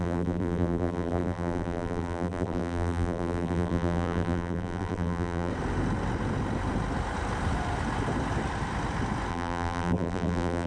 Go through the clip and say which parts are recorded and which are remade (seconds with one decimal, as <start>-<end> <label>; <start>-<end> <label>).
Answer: 0.0-5.5 remade; 5.5-9.3 recorded; 9.3-10.7 remade